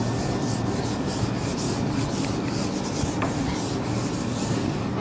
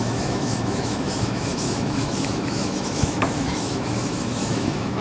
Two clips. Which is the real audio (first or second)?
first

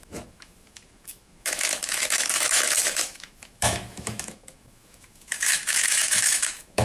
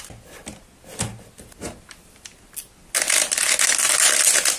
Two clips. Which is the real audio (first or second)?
second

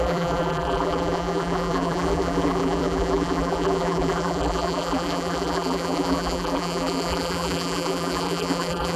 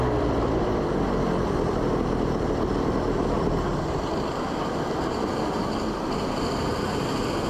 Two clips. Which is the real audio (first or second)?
second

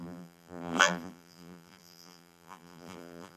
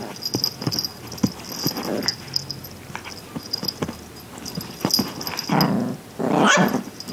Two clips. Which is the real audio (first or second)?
second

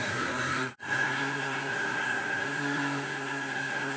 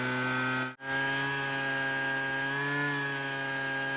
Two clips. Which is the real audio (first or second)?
second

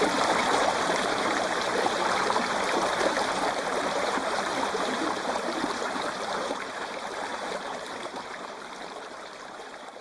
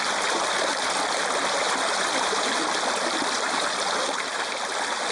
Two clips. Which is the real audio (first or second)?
second